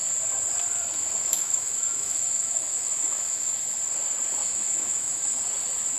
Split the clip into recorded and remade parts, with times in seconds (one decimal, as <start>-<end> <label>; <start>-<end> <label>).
0.0-1.2 recorded; 1.2-3.8 remade; 3.8-4.4 recorded; 4.4-5.4 remade; 5.4-6.0 recorded